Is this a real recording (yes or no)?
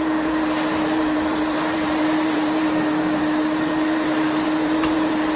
no